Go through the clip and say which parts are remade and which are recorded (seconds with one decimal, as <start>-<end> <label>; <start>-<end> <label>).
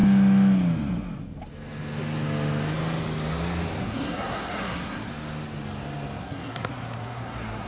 0.0-3.8 recorded; 3.8-5.1 remade; 5.1-6.2 recorded; 6.2-7.7 remade